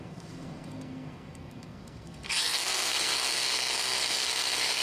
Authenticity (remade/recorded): remade